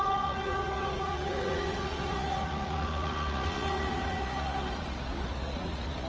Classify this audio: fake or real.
fake